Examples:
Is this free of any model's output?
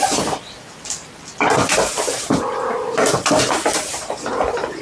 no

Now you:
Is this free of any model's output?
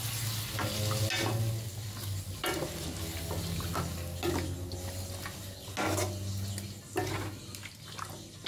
yes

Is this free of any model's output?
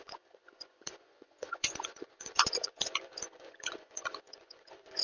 no